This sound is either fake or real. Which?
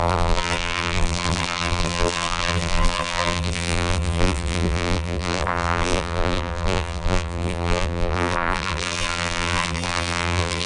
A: fake